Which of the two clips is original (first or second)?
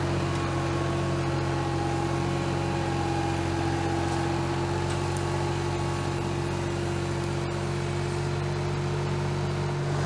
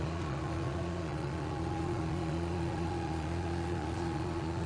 first